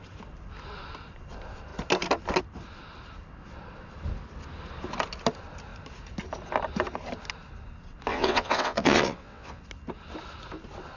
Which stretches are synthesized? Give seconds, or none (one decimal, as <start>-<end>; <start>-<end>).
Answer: 8.1-9.6